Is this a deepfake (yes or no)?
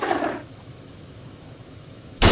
yes